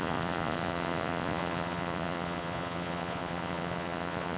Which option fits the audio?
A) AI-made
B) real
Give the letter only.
A